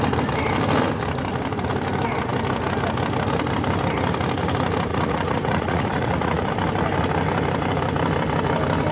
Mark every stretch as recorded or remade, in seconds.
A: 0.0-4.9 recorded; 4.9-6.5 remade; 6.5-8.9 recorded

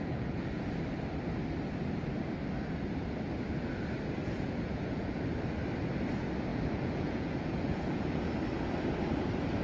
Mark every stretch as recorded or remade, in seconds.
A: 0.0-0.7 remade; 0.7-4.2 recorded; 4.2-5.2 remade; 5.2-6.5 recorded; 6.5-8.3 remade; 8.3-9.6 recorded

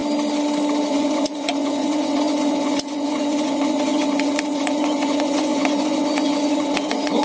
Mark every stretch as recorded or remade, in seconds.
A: 0.0-0.9 recorded; 0.9-7.2 remade

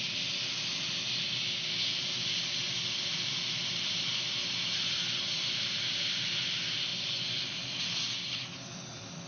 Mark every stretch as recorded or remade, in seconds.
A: 0.0-6.9 recorded; 6.9-7.5 remade; 7.5-9.3 recorded

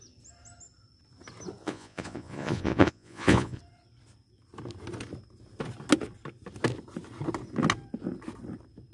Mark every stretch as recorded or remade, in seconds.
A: 0.0-1.6 recorded; 1.6-3.6 remade; 3.6-8.9 recorded

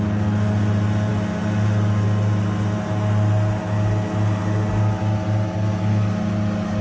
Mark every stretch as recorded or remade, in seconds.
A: 0.0-6.8 recorded

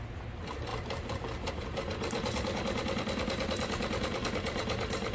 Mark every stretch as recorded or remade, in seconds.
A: 0.0-5.1 recorded

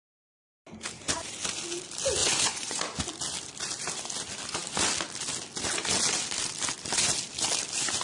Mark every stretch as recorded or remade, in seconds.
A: 0.0-2.2 recorded; 2.2-2.8 remade; 2.8-8.0 recorded